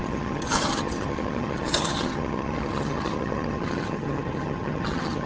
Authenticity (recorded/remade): remade